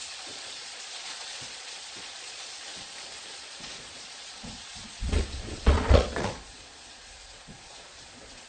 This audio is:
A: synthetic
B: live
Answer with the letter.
A